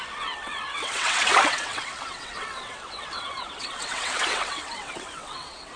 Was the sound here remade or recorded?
remade